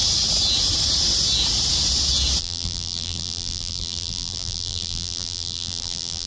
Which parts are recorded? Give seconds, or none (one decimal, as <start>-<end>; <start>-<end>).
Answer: 0.0-2.4